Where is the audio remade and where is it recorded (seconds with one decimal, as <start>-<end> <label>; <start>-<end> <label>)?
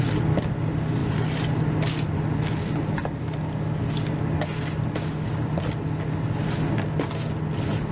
0.0-7.9 recorded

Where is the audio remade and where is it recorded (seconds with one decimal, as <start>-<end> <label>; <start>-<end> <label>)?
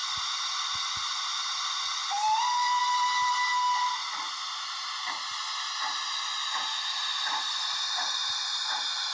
0.0-9.1 recorded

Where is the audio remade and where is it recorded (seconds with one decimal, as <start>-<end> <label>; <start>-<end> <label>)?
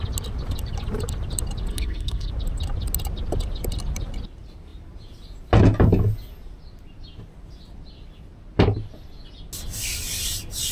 0.0-1.7 recorded; 1.7-2.3 remade; 2.3-10.7 recorded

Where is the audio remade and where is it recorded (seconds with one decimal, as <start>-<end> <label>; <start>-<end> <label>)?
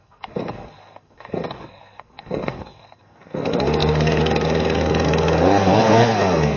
0.0-6.6 remade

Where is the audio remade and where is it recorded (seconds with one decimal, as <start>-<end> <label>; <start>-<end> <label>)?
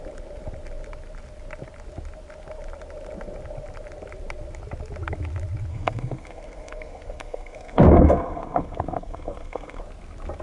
0.0-5.7 recorded; 5.7-9.8 remade; 9.8-10.4 recorded